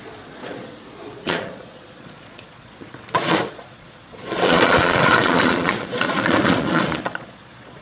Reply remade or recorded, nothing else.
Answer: remade